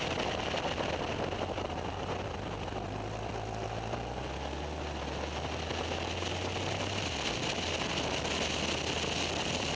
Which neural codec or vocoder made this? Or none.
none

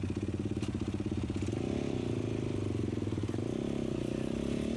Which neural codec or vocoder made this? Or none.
none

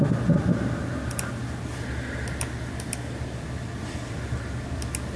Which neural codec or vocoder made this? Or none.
none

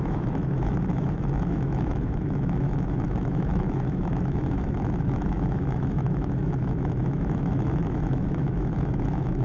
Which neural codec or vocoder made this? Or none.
autoencoder, DAC-VAE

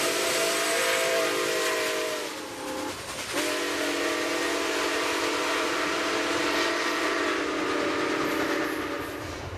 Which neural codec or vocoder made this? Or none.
none